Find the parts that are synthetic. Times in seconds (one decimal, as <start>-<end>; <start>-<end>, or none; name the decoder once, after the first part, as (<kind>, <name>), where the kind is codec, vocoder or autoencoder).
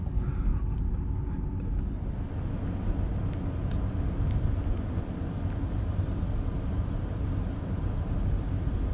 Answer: none